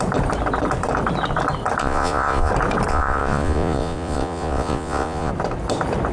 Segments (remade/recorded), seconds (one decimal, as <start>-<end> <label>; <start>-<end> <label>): 0.0-1.8 recorded; 1.8-2.5 remade; 2.5-2.9 recorded; 2.9-5.3 remade; 5.3-6.1 recorded